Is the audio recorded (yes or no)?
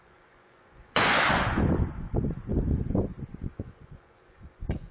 no